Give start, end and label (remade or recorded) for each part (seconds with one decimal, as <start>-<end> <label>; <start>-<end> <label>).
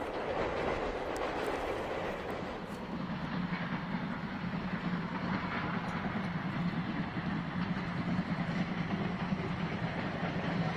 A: 0.0-10.8 recorded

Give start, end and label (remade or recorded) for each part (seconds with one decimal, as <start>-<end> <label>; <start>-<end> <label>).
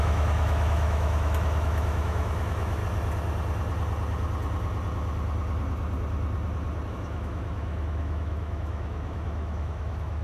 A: 0.0-2.8 remade; 2.8-6.9 recorded; 6.9-10.2 remade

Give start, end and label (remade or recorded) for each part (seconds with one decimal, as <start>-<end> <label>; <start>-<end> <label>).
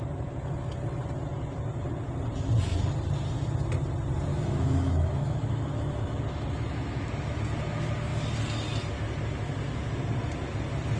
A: 0.0-4.3 recorded; 4.3-6.2 remade; 6.2-11.0 recorded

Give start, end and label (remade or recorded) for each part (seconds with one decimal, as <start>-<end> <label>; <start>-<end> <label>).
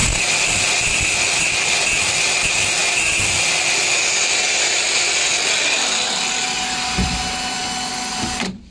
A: 0.0-8.7 recorded